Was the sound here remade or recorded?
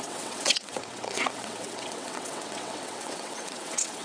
remade